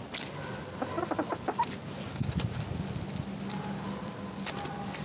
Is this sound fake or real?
real